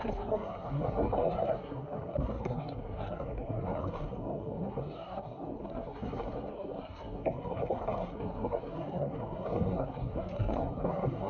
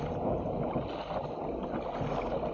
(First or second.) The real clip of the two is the second